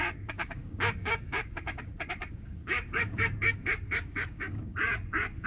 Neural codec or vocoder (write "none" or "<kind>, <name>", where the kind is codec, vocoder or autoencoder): codec, DAC